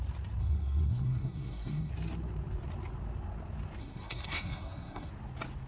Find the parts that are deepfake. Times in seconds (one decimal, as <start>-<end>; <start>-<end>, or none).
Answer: 0.4-1.9; 3.8-5.1